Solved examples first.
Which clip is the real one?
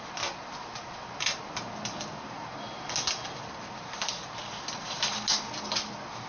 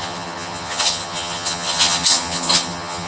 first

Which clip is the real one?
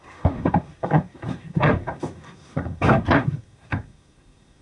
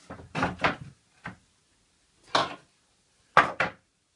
second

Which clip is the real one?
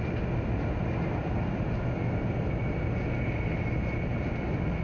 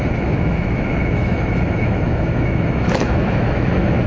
first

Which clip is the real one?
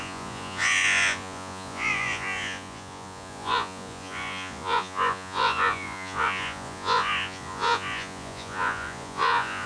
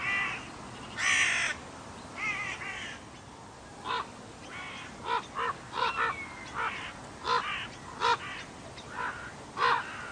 second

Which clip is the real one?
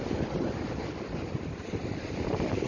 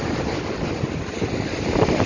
second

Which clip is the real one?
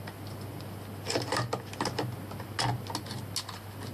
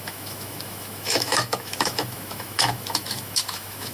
first